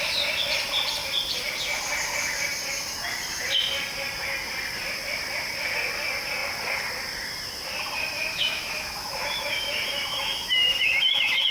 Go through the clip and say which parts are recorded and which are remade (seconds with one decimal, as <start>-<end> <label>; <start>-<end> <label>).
0.0-8.3 recorded; 8.3-11.5 remade

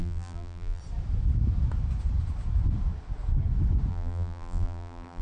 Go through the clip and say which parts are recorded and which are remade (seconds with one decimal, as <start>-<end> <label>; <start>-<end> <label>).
0.0-0.8 remade; 0.8-3.9 recorded; 3.9-5.2 remade

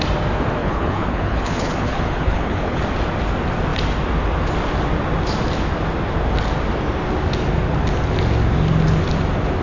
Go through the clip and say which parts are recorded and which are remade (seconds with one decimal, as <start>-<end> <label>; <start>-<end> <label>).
0.0-0.6 recorded; 0.6-2.8 remade; 2.8-9.6 recorded

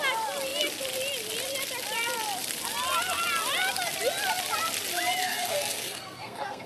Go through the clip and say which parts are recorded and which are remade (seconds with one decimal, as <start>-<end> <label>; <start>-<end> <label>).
0.0-5.2 recorded; 5.2-6.7 remade

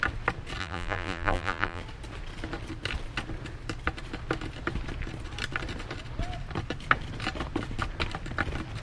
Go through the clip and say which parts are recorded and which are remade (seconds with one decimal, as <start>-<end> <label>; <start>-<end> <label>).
0.0-0.6 recorded; 0.6-1.8 remade; 1.8-8.8 recorded

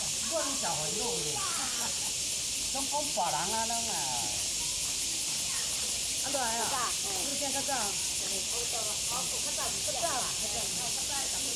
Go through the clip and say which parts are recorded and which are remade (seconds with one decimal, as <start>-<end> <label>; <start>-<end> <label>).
0.0-1.2 recorded; 1.2-1.9 remade; 1.9-11.6 recorded

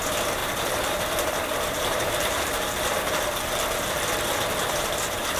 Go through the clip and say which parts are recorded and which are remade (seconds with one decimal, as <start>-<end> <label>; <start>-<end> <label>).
0.0-0.4 recorded; 0.4-1.0 remade; 1.0-1.5 recorded; 1.5-3.2 remade; 3.2-5.4 recorded